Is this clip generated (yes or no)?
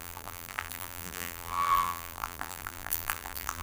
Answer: yes